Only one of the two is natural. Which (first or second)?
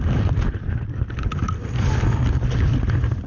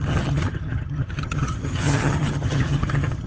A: first